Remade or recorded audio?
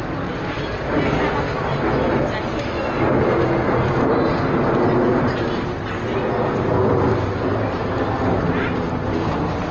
recorded